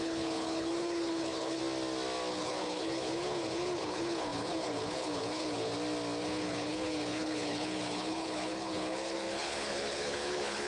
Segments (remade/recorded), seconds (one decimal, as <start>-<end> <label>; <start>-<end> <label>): 0.0-1.6 remade; 1.6-2.3 recorded; 2.3-5.7 remade; 5.7-6.2 recorded; 6.2-10.7 remade